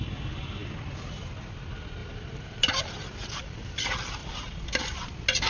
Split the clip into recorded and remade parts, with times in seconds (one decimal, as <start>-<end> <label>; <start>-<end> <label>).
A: 0.0-2.0 recorded; 2.0-3.8 remade; 3.8-4.2 recorded; 4.2-5.1 remade; 5.1-5.5 recorded